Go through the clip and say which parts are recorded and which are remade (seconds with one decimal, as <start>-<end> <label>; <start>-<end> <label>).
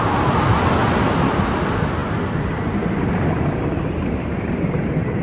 0.0-5.2 recorded